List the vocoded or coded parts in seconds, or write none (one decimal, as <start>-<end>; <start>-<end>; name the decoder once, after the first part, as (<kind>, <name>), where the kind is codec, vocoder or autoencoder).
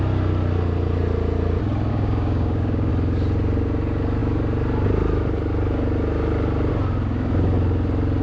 1.9-2.9 (codec, DAC)